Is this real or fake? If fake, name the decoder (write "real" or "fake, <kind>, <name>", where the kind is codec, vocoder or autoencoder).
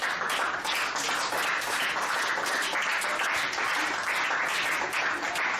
real